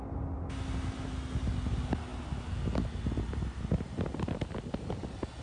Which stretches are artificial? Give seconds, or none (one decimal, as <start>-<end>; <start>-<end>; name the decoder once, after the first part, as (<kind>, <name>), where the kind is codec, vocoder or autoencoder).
none